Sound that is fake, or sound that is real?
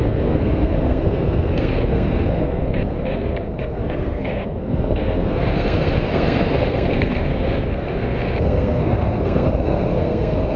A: fake